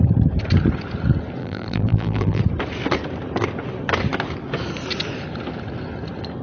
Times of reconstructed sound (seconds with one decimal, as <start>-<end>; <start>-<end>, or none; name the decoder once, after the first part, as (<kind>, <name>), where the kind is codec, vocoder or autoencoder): 1.4-2.4 (vocoder, BigVGAN v2)